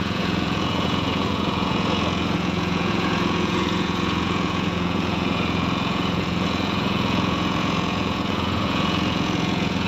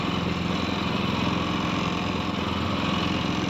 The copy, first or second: first